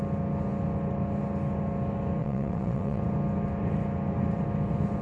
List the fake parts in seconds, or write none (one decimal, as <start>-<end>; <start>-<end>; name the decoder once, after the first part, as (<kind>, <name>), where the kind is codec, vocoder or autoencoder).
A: 2.2-3.0 (vocoder, WaveNeXt)